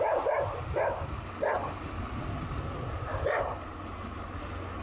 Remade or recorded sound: recorded